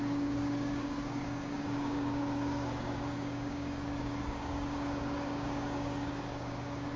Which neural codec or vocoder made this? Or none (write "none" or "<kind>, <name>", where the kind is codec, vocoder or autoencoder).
codec, DAC